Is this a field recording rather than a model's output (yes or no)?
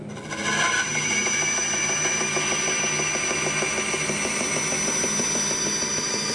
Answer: yes